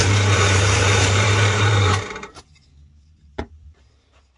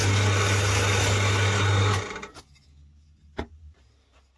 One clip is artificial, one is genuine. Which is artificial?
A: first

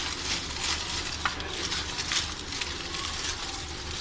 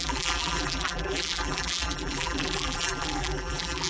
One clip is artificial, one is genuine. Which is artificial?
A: second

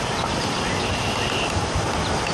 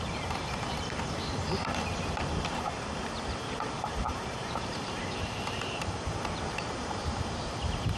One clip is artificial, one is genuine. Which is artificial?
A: second